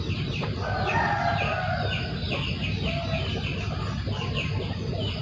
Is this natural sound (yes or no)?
yes